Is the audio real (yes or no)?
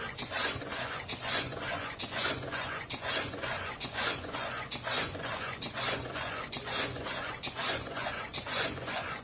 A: no